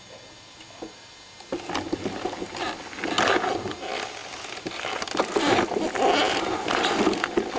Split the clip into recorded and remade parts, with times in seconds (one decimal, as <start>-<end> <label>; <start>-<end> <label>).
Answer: 0.0-7.6 recorded